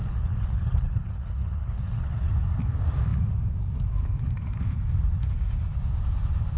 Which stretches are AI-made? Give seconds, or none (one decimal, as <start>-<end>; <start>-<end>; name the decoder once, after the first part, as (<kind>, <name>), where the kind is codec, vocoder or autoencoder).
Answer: 0.0-2.3 (codec, HILCodec)